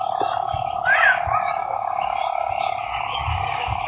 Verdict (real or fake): fake